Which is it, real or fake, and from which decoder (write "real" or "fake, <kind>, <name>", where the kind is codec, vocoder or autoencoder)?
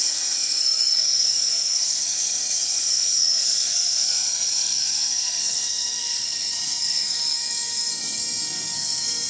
fake, codec, SNAC